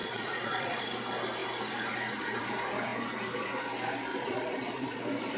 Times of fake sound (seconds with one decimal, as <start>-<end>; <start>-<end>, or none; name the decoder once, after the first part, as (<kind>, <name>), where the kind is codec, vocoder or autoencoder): 0.0-0.8 (vocoder, Vocos); 4.1-5.0